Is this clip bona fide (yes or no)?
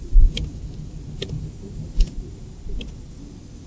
yes